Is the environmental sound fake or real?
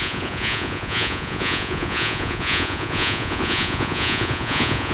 fake